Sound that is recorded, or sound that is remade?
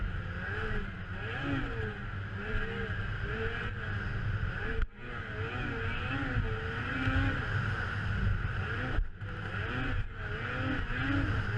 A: recorded